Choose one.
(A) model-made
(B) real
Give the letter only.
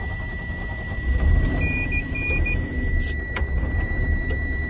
A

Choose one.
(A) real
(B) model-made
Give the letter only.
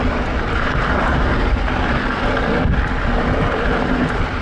A